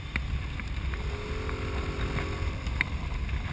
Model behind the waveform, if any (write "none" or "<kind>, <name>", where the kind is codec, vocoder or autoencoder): none